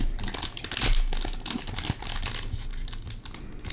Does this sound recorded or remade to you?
recorded